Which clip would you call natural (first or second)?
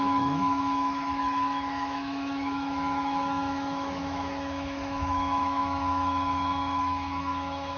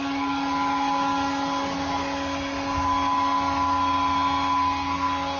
second